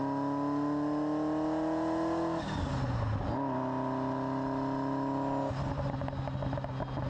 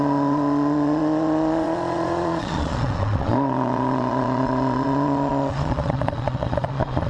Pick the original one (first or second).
first